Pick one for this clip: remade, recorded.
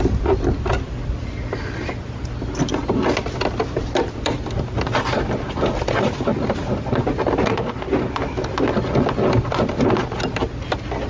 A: recorded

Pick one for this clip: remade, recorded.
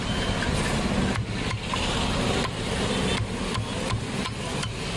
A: recorded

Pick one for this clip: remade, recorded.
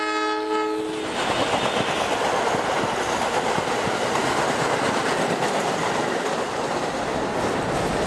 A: recorded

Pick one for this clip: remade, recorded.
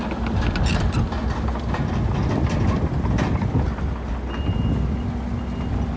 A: remade